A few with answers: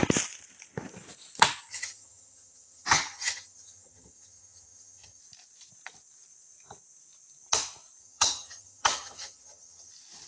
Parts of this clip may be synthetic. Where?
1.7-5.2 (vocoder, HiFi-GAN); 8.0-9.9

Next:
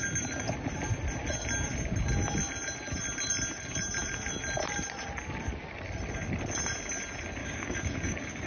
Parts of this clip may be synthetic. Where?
7.4-8.5 (codec, DAC)

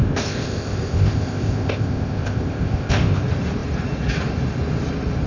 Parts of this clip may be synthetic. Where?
0.0-3.2 (codec, ZipCodec)